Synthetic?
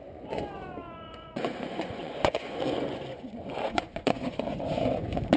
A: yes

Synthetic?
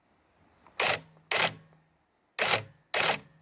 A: no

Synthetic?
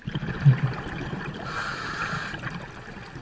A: no